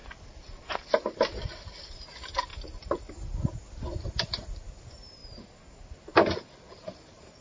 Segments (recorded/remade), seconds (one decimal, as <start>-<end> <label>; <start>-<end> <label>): 0.0-2.5 recorded; 2.5-3.1 remade; 3.1-7.4 recorded